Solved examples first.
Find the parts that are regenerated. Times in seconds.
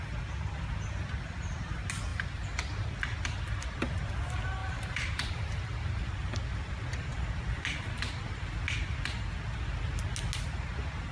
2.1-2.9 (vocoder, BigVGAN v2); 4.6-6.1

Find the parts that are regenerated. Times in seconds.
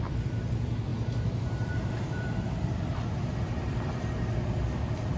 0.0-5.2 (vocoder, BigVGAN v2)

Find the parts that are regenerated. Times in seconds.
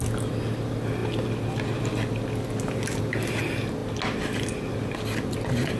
none